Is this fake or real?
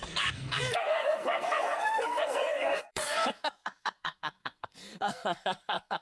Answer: fake